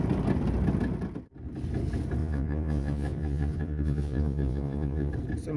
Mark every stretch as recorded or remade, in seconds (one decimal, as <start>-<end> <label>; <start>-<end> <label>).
0.0-2.2 recorded; 2.2-5.1 remade; 5.1-5.6 recorded